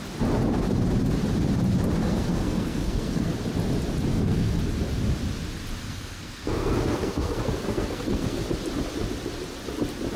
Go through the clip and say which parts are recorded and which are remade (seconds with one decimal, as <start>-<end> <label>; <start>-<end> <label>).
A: 0.0-2.0 recorded; 2.0-3.3 remade; 3.3-4.1 recorded; 4.1-4.6 remade; 4.6-5.8 recorded; 5.8-8.4 remade; 8.4-10.2 recorded